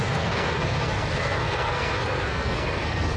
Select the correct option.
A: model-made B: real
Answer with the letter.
A